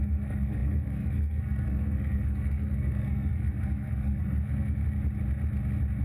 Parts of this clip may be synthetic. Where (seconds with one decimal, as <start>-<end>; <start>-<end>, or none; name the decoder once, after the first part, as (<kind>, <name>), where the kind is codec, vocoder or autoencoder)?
0.0-4.8 (codec, SNAC)